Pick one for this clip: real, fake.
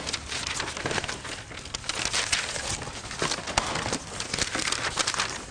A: real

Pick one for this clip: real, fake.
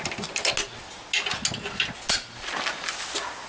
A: real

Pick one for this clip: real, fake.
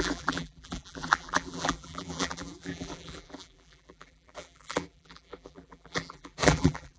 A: fake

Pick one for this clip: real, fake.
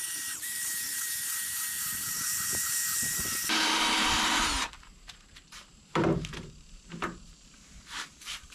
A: fake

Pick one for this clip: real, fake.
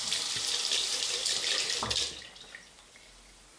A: real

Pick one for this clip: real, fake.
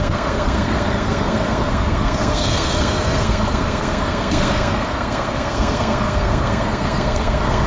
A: fake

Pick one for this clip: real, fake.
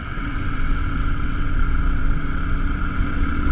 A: fake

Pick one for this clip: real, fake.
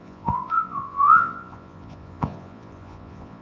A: fake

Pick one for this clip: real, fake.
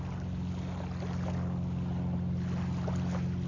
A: real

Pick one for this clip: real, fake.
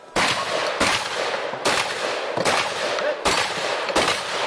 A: real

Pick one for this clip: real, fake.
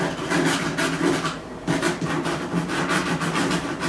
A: real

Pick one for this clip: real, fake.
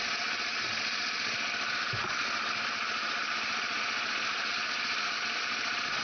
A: real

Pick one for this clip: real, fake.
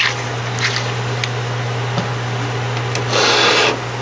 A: real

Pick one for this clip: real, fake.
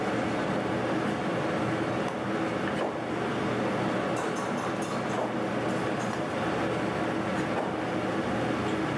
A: real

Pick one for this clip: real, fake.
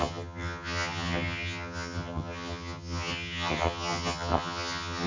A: fake